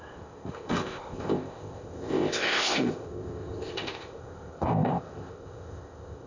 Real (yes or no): no